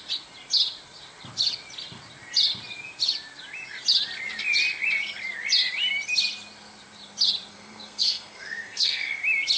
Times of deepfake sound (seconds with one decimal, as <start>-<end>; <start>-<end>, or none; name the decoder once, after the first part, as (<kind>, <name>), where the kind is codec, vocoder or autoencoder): 7.5-9.2 (codec, SNAC)